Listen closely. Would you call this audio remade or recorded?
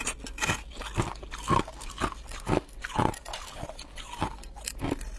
recorded